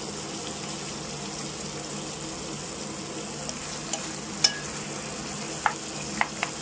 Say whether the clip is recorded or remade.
recorded